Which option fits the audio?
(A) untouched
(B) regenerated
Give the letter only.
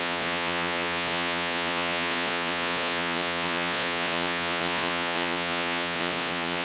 B